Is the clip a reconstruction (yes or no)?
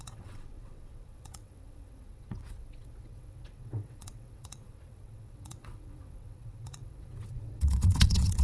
yes